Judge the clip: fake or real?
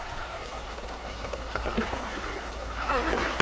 fake